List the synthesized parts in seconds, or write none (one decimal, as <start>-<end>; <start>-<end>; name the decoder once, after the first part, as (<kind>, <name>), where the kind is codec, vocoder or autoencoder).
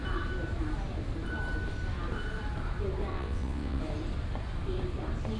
3.1-3.8 (vocoder, WaveNeXt)